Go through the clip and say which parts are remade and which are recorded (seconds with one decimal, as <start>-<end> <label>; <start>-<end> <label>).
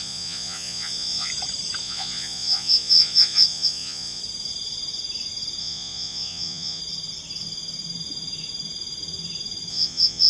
0.0-1.3 remade; 1.3-1.8 recorded; 1.8-4.2 remade; 4.2-5.6 recorded; 5.6-6.8 remade; 6.8-9.7 recorded; 9.7-10.3 remade